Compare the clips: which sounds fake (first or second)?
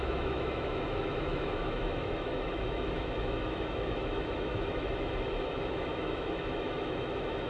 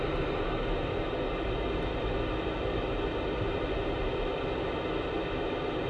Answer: first